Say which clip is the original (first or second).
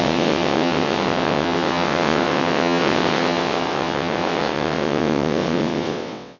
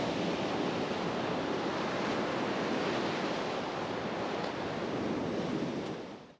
second